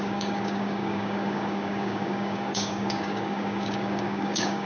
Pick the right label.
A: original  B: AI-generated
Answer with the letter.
B